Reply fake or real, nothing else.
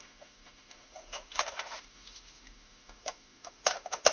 fake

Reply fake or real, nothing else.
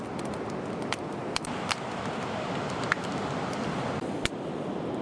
real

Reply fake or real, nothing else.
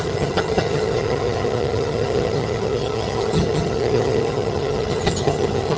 fake